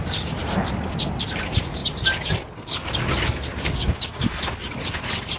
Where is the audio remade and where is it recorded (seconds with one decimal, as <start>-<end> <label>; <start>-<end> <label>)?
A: 0.0-3.5 recorded; 3.5-4.2 remade; 4.2-5.4 recorded